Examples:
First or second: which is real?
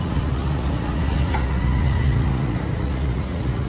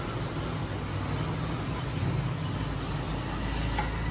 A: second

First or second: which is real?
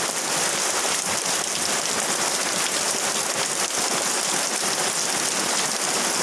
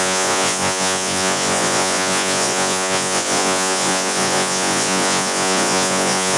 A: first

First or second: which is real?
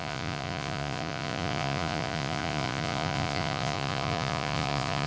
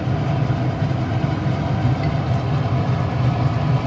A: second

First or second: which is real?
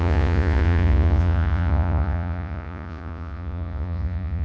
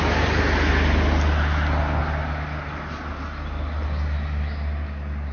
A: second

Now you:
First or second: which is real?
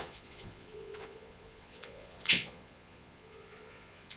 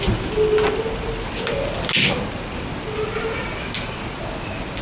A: second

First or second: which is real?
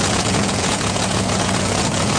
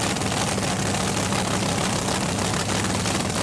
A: second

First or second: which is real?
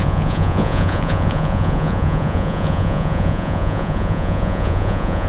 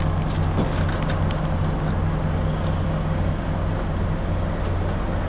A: second